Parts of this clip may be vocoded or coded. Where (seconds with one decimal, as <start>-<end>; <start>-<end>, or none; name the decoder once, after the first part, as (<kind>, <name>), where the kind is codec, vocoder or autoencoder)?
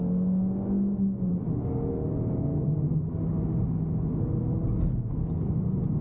none